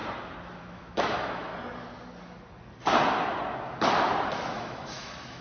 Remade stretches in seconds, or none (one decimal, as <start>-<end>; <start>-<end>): 0.6-1.5; 4.3-5.4